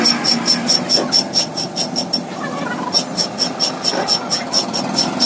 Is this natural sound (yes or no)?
yes